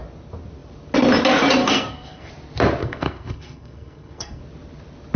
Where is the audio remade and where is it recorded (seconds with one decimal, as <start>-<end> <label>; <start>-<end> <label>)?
0.0-1.6 recorded; 1.6-2.3 remade; 2.3-2.8 recorded; 2.8-4.4 remade; 4.4-5.2 recorded